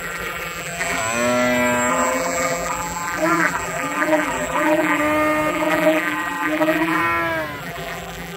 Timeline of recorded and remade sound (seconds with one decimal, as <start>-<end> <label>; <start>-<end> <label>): 0.0-1.0 remade; 1.0-1.9 recorded; 1.9-5.0 remade; 5.0-5.5 recorded; 5.5-7.0 remade; 7.0-7.6 recorded; 7.6-8.4 remade